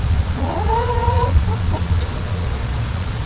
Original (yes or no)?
no